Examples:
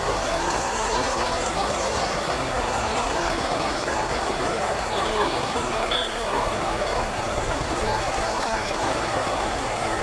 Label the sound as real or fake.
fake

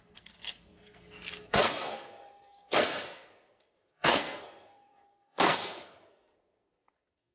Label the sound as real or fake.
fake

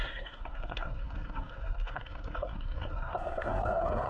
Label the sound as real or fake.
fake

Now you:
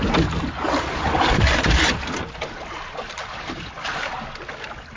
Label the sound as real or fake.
real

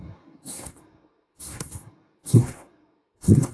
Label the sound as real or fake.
fake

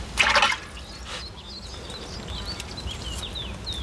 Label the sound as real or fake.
real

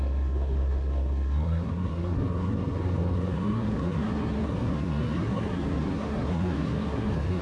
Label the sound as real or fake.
fake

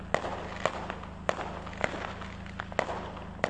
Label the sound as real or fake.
real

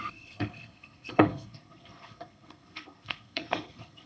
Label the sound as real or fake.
fake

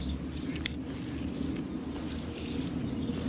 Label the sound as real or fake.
real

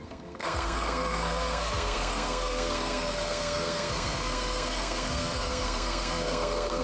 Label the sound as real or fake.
fake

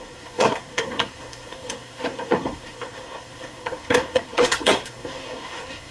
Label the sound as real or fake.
fake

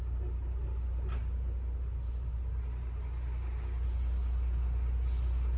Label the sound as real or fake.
real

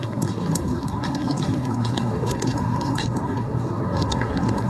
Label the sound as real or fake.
fake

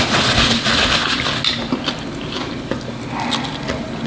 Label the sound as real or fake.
real